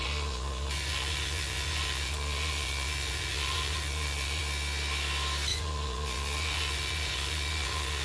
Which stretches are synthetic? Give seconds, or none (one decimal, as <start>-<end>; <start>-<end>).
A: 0.0-4.4; 5.5-8.0